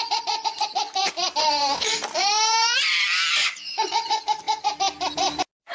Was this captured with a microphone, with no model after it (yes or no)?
yes